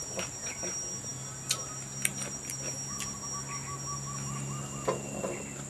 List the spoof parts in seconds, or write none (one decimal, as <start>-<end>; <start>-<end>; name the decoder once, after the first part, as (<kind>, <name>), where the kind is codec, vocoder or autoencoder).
none